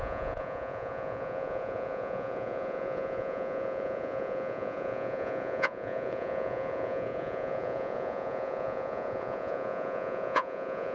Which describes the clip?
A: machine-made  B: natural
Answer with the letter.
A